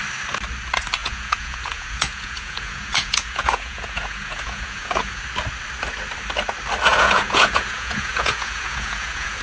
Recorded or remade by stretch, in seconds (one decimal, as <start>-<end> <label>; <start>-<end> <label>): 0.0-1.0 recorded; 1.0-5.2 remade; 5.2-6.9 recorded; 6.9-9.4 remade